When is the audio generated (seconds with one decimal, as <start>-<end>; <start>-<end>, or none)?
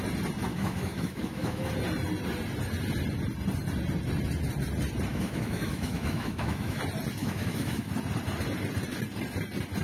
0.5-1.7; 5.1-6.8; 7.2-7.9